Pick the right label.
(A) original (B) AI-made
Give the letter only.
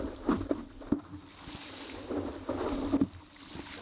A